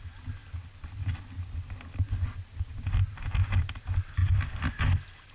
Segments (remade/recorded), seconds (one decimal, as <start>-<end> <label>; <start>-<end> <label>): 0.0-5.3 recorded